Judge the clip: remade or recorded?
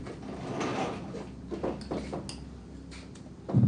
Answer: recorded